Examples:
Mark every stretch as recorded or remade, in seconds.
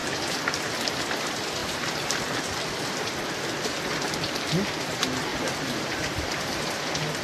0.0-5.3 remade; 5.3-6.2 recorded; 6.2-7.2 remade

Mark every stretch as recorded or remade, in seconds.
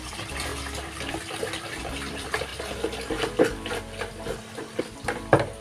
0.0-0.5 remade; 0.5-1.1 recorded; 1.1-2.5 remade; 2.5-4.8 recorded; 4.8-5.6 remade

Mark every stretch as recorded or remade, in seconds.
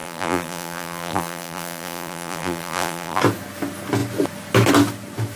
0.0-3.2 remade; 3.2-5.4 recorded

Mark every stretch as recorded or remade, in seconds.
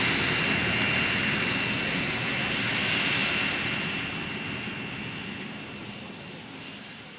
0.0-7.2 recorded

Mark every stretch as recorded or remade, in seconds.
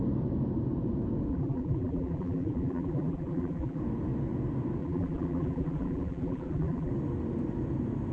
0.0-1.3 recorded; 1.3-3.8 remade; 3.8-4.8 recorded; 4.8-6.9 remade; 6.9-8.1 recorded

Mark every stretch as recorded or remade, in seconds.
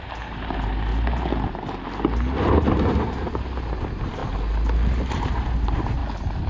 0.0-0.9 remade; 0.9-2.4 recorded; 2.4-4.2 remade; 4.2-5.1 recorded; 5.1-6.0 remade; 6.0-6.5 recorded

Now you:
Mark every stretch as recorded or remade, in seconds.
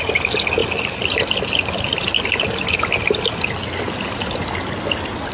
0.0-5.3 recorded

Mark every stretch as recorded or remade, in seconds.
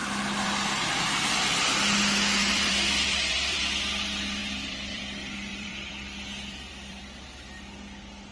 0.0-2.4 recorded; 2.4-3.6 remade; 3.6-4.4 recorded; 4.4-5.0 remade; 5.0-5.5 recorded; 5.5-7.0 remade; 7.0-8.3 recorded